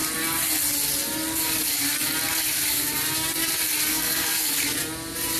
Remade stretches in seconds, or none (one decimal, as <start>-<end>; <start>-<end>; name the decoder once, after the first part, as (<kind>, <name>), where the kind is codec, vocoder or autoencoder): 3.9-4.5 (codec, SNAC)